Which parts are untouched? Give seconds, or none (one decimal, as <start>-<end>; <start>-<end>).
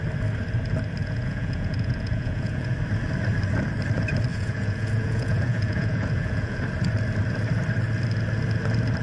0.0-1.0; 2.7-4.3; 6.6-9.0